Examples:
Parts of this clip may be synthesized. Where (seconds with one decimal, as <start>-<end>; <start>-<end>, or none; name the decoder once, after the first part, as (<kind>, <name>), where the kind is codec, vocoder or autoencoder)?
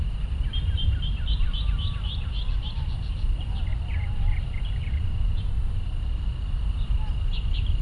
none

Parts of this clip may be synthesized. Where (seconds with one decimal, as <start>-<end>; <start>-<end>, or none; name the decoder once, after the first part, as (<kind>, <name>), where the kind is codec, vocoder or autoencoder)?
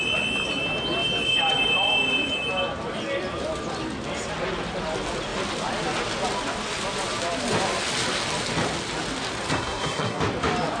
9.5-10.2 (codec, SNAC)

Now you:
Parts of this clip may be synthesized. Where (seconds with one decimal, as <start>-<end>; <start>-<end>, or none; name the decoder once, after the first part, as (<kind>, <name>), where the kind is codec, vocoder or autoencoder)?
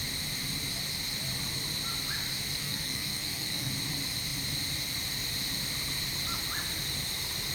2.6-3.7 (codec, SNAC)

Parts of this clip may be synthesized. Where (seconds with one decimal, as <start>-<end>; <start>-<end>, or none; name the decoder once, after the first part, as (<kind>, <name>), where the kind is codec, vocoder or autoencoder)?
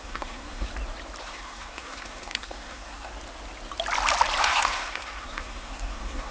0.0-0.7 (codec, SNAC); 1.2-3.1; 4.4-6.3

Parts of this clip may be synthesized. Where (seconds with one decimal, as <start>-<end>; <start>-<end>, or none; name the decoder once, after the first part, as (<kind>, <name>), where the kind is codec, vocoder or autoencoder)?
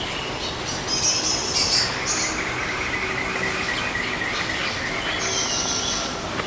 none